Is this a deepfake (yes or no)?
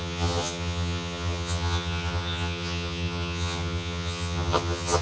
yes